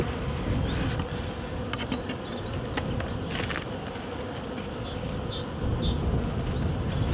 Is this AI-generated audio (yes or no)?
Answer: no